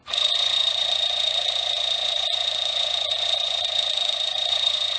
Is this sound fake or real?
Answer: fake